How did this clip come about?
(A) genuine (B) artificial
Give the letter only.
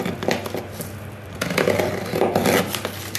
A